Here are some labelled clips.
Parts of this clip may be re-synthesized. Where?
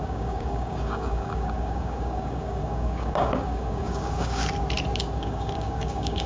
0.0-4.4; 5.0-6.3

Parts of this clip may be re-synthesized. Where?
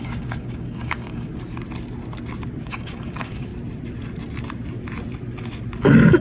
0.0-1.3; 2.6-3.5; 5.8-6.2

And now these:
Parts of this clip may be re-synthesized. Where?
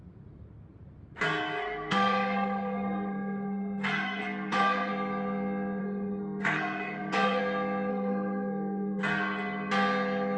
1.6-4.9; 5.8-7.4; 7.9-9.0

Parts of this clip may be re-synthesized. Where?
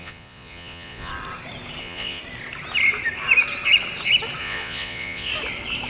0.0-1.1; 1.8-2.2; 4.4-5.3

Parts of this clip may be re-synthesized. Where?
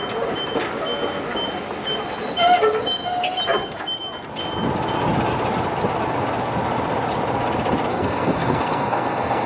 7.9-9.5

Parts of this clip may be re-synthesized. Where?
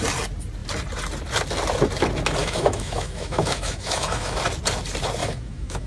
2.4-4.4; 5.2-5.9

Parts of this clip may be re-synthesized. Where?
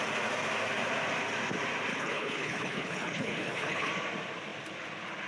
1.9-3.9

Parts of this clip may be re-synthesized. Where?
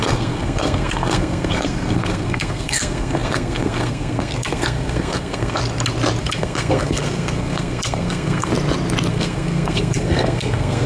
0.0-5.6; 6.2-8.5; 9.1-10.9